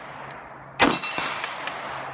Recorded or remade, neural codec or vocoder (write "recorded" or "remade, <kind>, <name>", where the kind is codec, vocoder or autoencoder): recorded